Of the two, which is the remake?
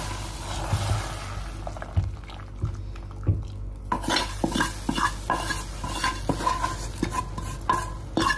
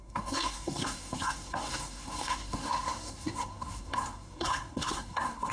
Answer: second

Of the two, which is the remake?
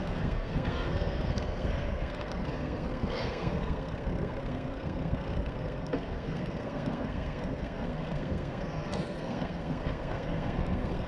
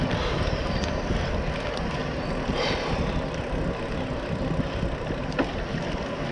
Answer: first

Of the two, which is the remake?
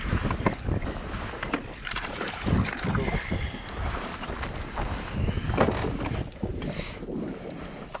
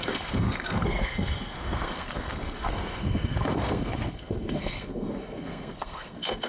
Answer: second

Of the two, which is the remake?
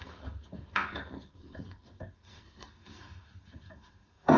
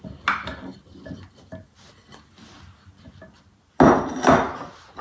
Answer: first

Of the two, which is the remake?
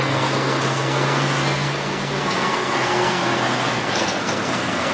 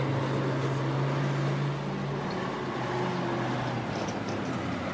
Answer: first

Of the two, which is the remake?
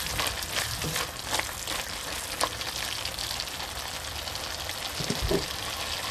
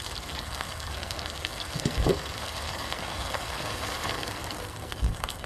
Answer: second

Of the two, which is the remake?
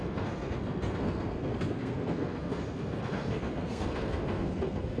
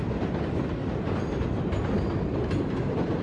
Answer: first